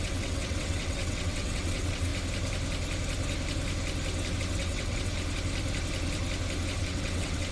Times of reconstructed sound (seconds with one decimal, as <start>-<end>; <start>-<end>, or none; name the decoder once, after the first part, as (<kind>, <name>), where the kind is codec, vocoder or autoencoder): 0.0-2.1 (vocoder, WaveNeXt); 4.4-5.1; 6.8-7.5